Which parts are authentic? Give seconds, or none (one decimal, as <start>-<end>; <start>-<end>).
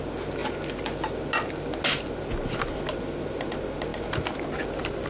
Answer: 0.0-5.1